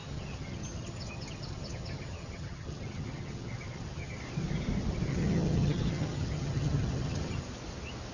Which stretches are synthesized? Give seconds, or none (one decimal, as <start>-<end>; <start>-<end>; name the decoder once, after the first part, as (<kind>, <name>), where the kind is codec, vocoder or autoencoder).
0.0-4.2 (vocoder, HiFi-GAN); 5.1-7.4